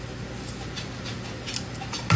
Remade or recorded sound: recorded